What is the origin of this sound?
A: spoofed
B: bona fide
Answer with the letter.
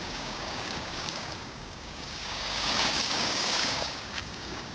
A